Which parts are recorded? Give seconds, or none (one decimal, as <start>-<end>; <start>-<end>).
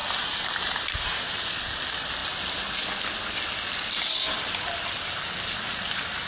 1.5-6.3